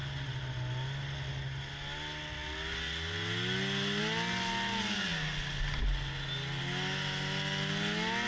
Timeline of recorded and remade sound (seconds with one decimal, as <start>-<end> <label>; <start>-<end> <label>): 0.0-8.3 recorded